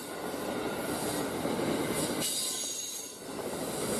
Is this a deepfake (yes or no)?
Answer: no